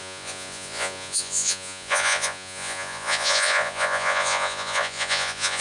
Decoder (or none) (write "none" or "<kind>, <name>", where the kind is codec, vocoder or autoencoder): vocoder, Vocos